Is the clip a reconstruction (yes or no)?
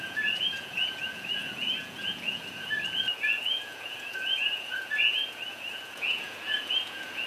yes